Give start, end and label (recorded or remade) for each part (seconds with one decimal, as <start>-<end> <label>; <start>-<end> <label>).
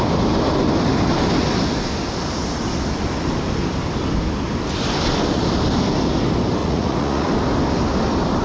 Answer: 0.0-6.6 recorded; 6.6-7.3 remade; 7.3-8.4 recorded